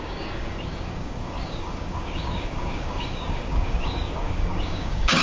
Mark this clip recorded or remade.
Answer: remade